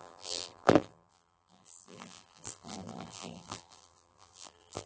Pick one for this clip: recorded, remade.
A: remade